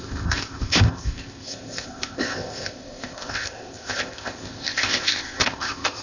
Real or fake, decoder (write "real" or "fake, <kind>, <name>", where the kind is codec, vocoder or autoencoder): fake, codec, ZipCodec